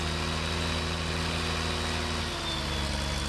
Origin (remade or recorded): recorded